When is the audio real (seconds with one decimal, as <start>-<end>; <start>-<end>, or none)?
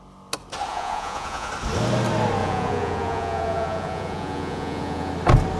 0.0-0.7; 1.5-2.4; 5.1-5.6